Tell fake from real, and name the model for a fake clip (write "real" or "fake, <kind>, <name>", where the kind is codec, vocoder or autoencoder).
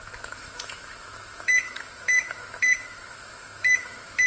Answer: fake, autoencoder, DAC-VAE